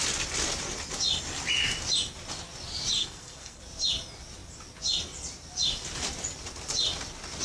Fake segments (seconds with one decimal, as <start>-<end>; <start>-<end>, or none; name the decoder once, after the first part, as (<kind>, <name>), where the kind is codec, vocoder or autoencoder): 3.0-3.6 (codec, SNAC)